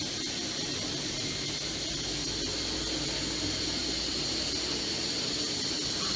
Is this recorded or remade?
recorded